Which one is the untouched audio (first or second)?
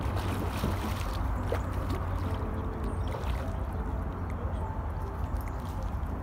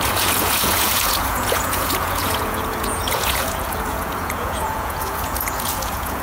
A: first